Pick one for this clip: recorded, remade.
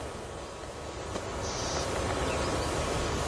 recorded